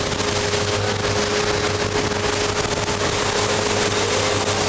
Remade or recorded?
recorded